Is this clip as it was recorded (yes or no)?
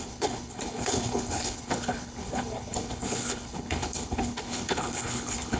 no